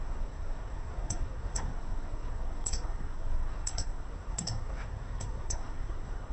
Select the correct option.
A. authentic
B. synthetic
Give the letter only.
B